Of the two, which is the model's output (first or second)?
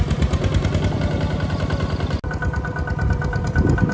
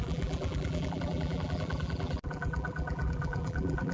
second